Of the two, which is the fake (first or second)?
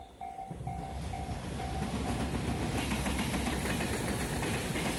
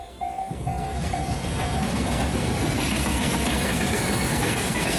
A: second